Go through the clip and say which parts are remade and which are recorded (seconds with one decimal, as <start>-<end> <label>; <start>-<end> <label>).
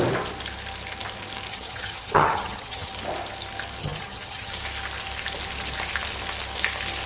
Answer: 0.0-1.5 recorded; 1.5-2.9 remade; 2.9-3.8 recorded; 3.8-4.5 remade; 4.5-7.1 recorded